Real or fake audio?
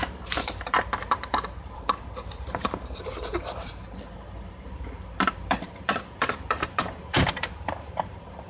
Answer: fake